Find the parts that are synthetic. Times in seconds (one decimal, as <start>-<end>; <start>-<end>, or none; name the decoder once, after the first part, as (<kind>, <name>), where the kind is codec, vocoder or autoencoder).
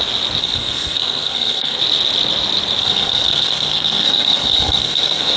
0.4-1.8 (codec, SNAC); 2.8-5.4